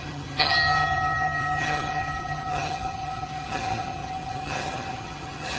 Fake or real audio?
fake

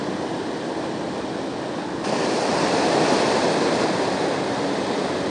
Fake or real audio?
real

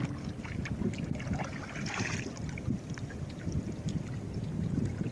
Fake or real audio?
real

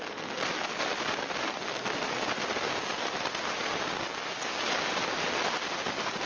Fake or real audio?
real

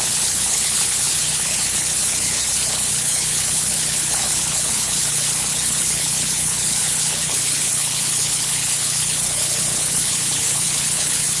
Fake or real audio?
fake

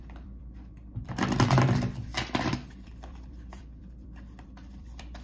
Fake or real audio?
fake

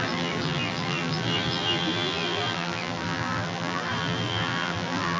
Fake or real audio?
fake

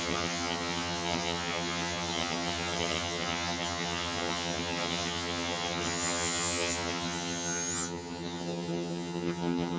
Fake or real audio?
fake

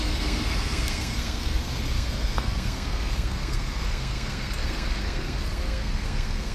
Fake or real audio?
fake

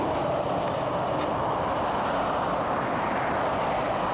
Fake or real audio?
real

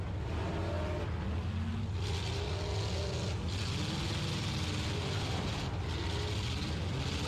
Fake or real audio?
real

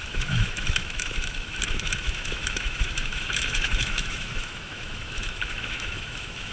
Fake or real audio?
fake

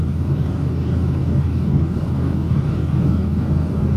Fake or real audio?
fake